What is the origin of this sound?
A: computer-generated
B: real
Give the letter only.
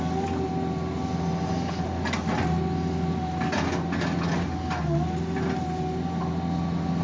B